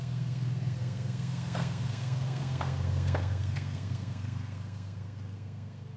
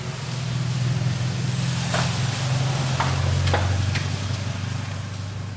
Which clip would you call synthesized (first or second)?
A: first